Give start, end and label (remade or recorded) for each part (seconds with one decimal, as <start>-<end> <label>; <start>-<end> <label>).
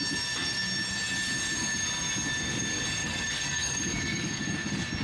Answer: 0.0-3.0 recorded; 3.0-4.4 remade; 4.4-5.0 recorded